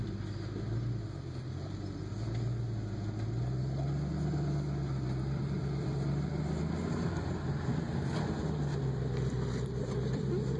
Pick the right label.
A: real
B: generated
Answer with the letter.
A